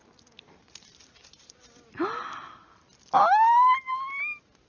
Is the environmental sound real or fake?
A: real